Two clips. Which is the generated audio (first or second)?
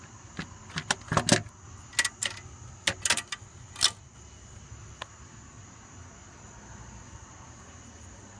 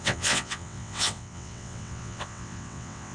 second